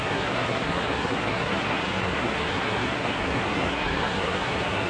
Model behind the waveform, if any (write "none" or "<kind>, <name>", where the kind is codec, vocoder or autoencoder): codec, SNAC